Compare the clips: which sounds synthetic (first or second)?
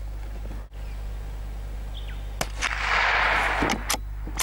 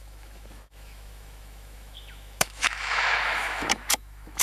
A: second